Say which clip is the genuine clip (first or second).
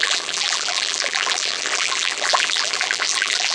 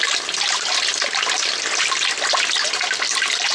second